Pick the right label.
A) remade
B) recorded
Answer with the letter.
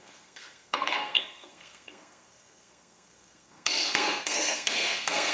A